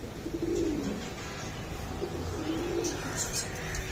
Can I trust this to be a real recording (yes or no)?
yes